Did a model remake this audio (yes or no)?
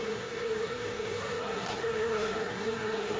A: yes